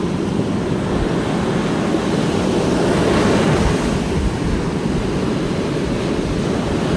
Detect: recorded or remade recorded